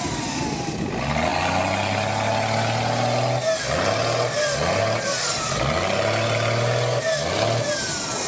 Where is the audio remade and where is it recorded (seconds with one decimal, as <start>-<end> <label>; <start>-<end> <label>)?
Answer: 0.0-8.3 recorded